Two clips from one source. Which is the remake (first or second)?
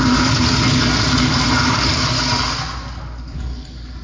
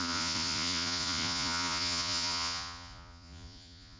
second